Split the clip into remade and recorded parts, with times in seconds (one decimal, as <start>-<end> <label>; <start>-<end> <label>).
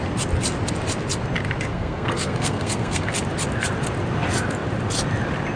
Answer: 0.0-1.7 recorded; 1.7-3.1 remade; 3.1-5.6 recorded